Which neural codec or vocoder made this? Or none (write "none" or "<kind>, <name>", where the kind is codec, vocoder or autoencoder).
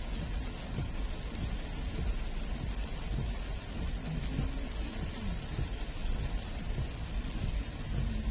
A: none